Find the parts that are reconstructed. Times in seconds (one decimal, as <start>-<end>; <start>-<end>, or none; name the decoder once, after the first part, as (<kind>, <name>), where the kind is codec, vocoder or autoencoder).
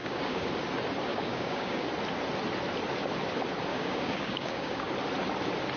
0.0-0.5 (codec, DAC); 1.1-1.8; 3.7-4.9